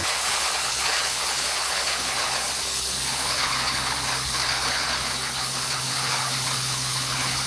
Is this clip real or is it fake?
fake